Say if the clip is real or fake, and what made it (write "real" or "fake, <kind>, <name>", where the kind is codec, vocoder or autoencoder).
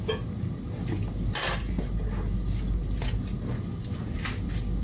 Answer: real